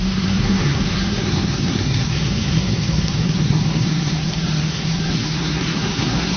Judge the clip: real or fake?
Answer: fake